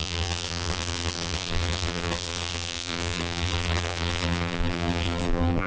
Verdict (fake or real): fake